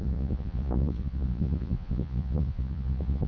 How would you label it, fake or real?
fake